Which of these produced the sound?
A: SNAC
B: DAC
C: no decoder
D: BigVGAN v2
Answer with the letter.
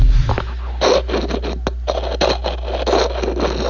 C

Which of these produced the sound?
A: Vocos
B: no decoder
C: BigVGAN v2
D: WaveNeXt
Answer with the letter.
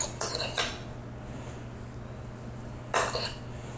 B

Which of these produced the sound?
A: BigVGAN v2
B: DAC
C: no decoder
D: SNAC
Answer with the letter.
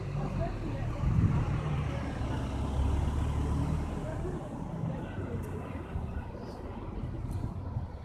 C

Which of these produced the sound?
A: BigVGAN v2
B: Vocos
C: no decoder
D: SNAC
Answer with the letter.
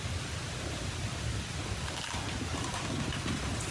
C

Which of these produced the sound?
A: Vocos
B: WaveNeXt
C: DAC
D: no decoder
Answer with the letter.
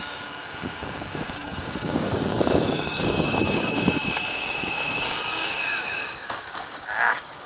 C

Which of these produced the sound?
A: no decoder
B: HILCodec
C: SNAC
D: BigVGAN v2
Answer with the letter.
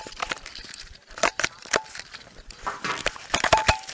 D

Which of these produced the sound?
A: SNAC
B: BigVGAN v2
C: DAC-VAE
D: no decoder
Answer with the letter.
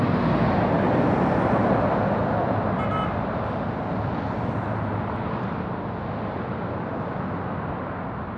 D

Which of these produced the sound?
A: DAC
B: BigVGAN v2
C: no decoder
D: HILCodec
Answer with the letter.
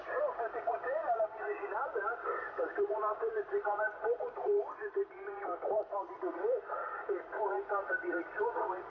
B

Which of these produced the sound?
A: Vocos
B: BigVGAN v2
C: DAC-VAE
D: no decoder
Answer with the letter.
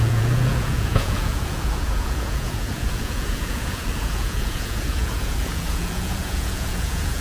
A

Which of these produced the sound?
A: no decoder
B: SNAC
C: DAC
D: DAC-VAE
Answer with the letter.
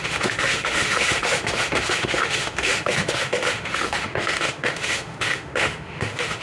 D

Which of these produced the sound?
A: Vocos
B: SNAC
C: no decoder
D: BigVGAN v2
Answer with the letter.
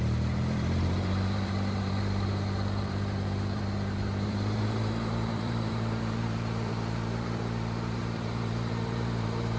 D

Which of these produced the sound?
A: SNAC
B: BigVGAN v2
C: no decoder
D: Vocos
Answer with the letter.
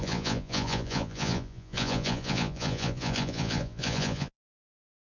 D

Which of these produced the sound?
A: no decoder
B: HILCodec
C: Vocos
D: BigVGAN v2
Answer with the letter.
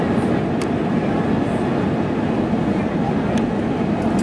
A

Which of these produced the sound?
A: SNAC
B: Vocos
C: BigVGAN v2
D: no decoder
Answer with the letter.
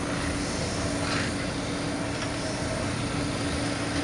D